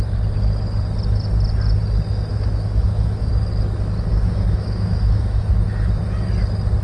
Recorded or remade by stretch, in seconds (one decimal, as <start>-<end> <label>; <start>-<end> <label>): 0.0-2.3 recorded; 2.3-3.3 remade; 3.3-4.1 recorded; 4.1-5.5 remade; 5.5-6.8 recorded